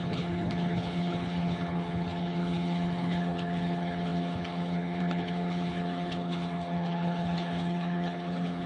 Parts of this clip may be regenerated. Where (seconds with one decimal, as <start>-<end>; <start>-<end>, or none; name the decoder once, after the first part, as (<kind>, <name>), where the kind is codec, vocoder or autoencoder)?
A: 0.0-8.7 (codec, HILCodec)